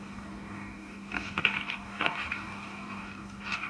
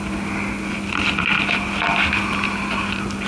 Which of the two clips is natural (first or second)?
second